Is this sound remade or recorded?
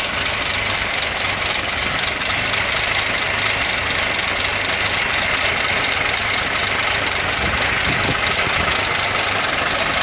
remade